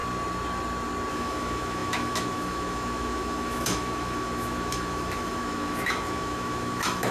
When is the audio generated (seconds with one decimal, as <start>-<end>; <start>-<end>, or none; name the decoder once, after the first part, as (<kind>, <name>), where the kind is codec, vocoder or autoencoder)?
1.1-7.1 (autoencoder, DAC-VAE)